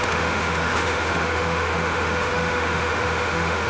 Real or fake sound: fake